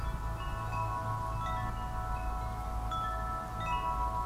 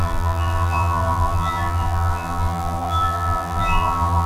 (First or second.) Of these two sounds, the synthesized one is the second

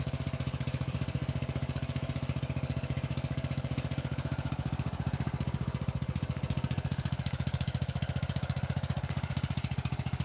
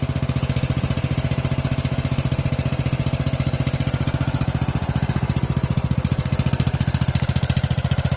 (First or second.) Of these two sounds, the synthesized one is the first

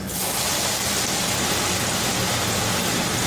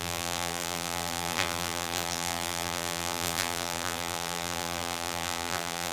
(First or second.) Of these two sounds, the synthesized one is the second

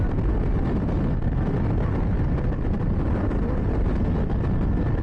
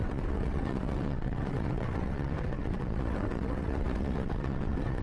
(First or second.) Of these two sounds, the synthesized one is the second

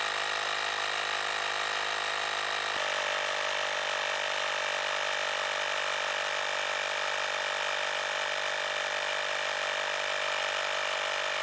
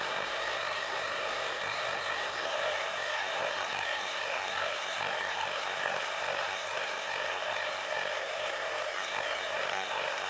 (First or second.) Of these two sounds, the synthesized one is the second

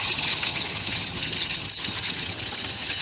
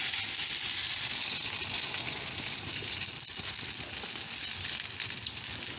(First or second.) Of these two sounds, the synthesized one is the first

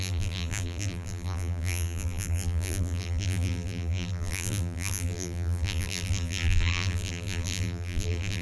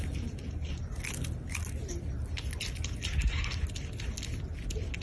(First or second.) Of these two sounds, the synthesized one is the first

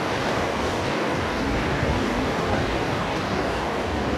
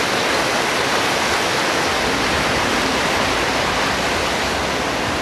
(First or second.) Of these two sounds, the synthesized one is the first